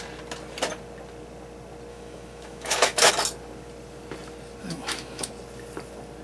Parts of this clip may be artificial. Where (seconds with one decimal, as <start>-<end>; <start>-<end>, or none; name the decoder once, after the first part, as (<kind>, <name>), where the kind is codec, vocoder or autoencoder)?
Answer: 1.9-3.1 (autoencoder, DAC-VAE); 4.6-5.3